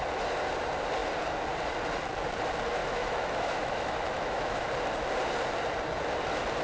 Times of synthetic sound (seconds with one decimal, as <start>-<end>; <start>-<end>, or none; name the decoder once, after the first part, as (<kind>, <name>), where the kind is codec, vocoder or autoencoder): 2.8-4.7 (autoencoder, DAC-VAE)